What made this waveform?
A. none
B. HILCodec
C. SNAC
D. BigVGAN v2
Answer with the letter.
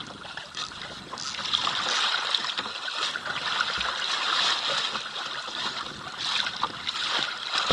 A